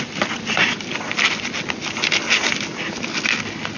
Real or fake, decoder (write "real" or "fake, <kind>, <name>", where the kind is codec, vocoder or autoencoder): real